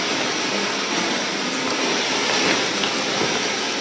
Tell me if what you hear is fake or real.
real